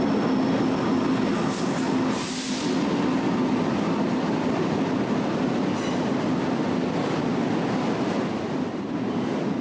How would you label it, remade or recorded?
recorded